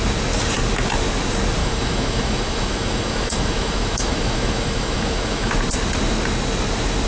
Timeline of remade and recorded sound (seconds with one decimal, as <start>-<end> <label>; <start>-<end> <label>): 0.0-1.6 recorded; 1.6-5.5 remade; 5.5-7.1 recorded